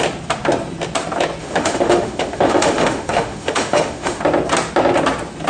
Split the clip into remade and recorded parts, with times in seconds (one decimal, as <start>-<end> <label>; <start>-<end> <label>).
0.0-1.4 recorded; 1.4-4.2 remade; 4.2-5.5 recorded